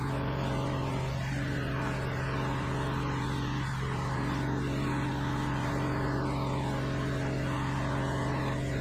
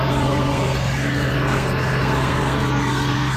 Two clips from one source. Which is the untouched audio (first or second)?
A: first